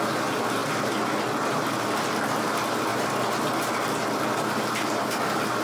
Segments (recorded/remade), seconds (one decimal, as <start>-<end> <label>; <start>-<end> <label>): 0.0-5.6 recorded